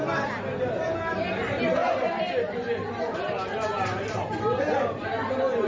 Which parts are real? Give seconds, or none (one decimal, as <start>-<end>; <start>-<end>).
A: 0.0-5.7